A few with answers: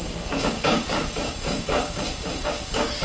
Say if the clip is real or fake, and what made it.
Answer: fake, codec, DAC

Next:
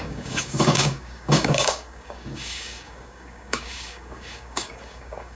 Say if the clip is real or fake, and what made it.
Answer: fake, codec, DAC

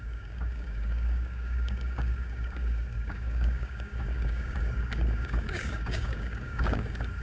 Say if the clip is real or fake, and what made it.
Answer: fake, codec, DAC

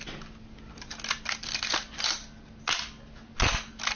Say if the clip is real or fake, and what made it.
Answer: real